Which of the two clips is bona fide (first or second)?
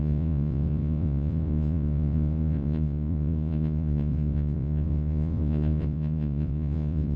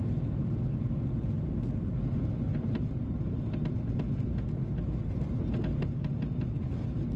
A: second